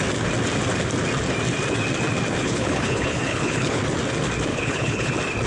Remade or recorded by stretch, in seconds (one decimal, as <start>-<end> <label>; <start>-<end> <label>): 0.0-2.4 recorded; 2.4-3.8 remade; 3.8-4.5 recorded; 4.5-5.1 remade; 5.1-5.5 recorded

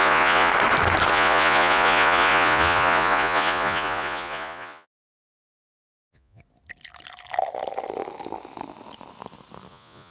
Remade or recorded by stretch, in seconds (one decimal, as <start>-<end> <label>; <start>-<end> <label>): 0.0-0.5 remade; 0.5-1.1 recorded; 1.1-6.4 remade; 6.4-9.7 recorded; 9.7-10.1 remade

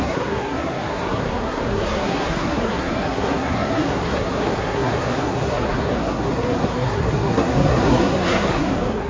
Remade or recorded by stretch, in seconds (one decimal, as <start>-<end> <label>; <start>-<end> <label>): 0.0-9.1 remade

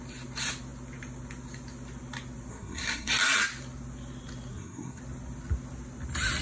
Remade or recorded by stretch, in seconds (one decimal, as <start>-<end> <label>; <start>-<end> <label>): 0.0-2.5 recorded; 2.5-3.1 remade; 3.1-4.5 recorded; 4.5-5.0 remade; 5.0-6.4 recorded